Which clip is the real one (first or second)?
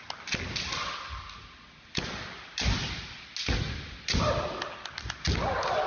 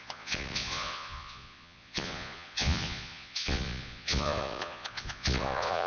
first